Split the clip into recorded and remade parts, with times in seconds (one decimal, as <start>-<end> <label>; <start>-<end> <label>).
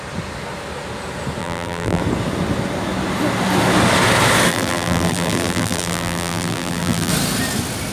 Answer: 0.0-1.4 recorded; 1.4-2.0 remade; 2.0-4.5 recorded; 4.5-7.1 remade; 7.1-7.9 recorded